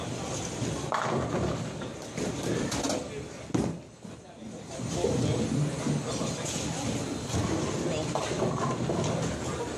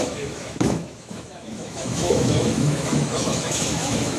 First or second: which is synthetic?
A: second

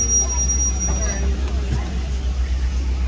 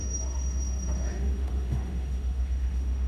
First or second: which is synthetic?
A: second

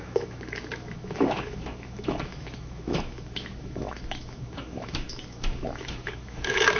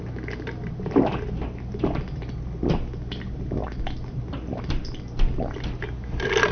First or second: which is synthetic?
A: first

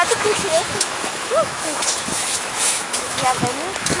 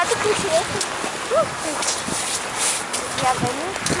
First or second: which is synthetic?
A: first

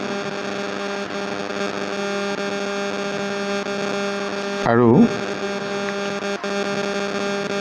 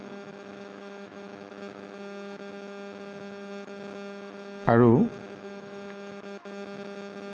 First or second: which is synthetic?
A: second